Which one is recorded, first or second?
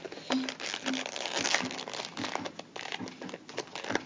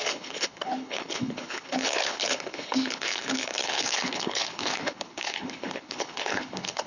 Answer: first